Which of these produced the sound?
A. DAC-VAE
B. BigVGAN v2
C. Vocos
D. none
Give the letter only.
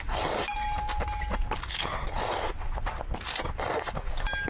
D